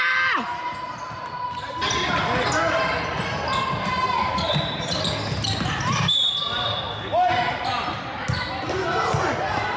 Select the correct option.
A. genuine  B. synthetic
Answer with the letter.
A